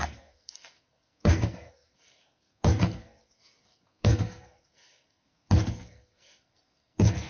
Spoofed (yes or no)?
yes